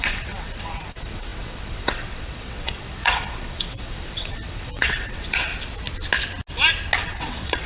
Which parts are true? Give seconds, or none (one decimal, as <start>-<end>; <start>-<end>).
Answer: 5.5-7.0